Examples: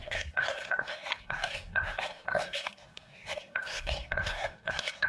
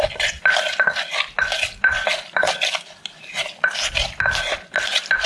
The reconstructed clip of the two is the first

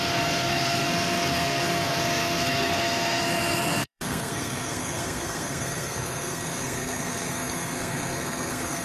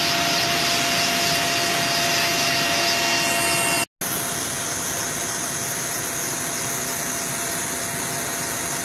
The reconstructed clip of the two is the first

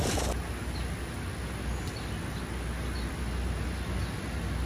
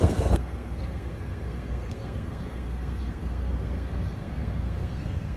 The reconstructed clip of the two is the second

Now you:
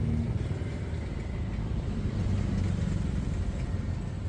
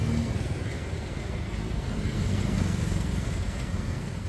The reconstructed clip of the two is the second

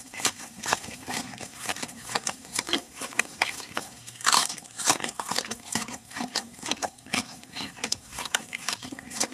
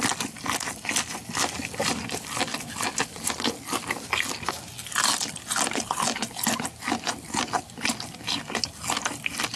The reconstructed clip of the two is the first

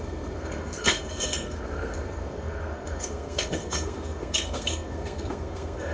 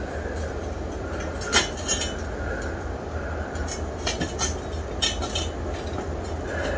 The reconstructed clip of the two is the first